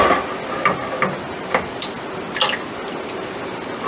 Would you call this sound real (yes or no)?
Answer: yes